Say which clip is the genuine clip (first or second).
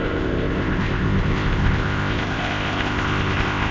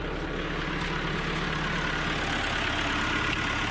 second